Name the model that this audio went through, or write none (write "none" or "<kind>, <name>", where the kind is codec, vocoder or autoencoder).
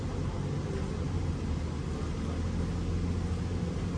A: none